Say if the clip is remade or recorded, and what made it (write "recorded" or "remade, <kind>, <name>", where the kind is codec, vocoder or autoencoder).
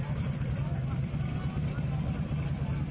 recorded